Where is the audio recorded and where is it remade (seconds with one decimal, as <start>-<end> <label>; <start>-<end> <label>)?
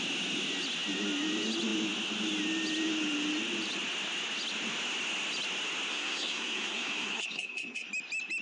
0.0-5.9 recorded; 5.9-7.9 remade; 7.9-8.4 recorded